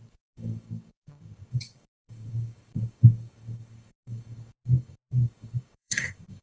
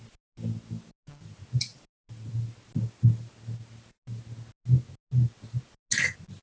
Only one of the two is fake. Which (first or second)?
first